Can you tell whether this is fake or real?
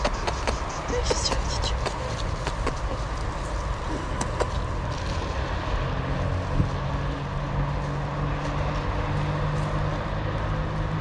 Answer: real